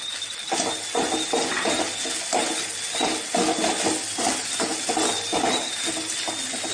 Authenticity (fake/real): real